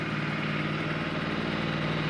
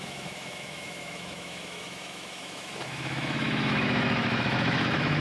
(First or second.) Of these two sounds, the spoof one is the second